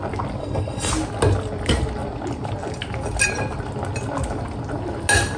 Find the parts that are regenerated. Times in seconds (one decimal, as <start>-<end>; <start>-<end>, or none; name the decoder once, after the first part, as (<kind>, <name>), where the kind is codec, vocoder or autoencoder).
0.4-0.9 (codec, SNAC)